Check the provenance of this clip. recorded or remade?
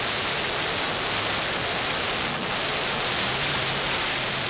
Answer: recorded